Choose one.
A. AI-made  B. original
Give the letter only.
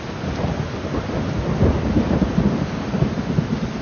B